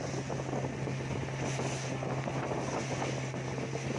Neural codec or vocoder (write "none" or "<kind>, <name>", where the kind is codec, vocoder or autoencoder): none